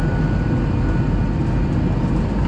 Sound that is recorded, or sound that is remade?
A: recorded